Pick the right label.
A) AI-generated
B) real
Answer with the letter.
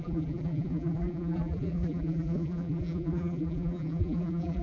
A